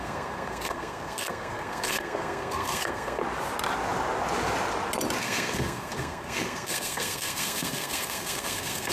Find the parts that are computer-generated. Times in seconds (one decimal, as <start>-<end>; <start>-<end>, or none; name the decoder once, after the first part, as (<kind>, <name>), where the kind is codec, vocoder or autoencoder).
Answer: 0.0-3.2 (codec, SNAC); 5.2-8.9